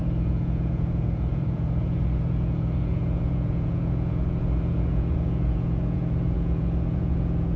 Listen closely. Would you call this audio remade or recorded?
remade